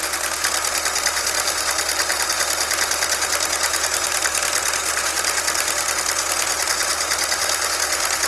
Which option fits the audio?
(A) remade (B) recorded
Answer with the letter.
B